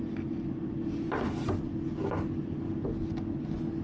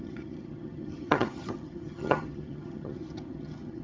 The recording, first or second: first